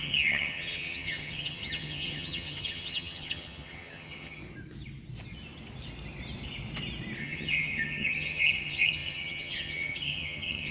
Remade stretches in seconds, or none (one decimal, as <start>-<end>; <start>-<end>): 0.0-4.4; 7.2-10.7